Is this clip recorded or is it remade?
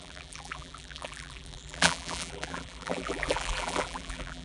remade